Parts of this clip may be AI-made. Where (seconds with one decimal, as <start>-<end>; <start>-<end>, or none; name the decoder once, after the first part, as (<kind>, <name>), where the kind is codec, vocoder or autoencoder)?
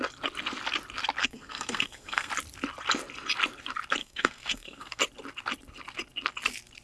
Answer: 1.2-2.3 (codec, SNAC); 4.0-5.0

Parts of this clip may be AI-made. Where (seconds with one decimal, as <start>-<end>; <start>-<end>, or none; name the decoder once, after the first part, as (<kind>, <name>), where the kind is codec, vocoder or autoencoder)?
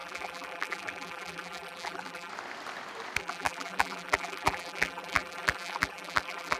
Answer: 0.0-2.3 (vocoder, BigVGAN v2); 3.2-6.6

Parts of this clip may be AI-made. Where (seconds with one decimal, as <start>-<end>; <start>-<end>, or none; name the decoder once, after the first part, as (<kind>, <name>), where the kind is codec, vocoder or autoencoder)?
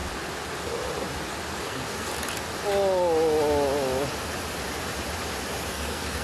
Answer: 1.6-2.1 (codec, SNAC); 5.7-6.2